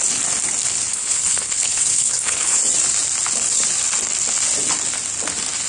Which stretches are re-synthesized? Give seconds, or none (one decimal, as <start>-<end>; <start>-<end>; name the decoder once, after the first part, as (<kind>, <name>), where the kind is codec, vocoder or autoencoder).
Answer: 0.9-2.6 (codec, HILCodec)